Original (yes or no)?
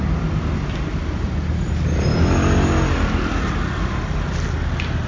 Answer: yes